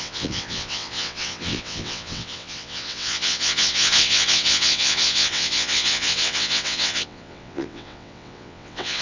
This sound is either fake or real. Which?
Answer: fake